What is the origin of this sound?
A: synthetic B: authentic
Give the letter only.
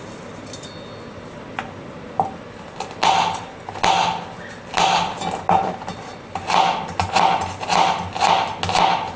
B